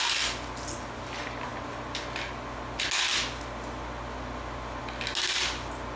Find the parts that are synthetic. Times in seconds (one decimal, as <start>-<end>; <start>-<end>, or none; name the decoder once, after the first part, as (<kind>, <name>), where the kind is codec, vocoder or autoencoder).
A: none